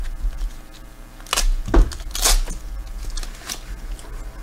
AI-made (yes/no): no